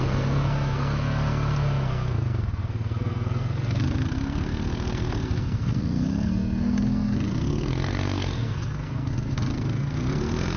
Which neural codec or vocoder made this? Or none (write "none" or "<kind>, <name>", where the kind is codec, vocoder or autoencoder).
codec, SNAC